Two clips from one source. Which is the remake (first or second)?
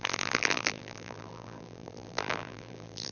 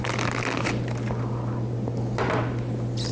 first